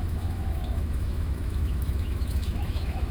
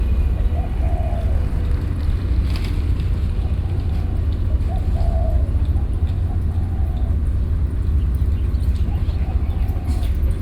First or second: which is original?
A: second